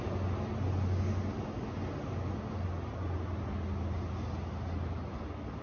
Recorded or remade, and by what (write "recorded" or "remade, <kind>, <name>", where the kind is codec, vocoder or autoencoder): recorded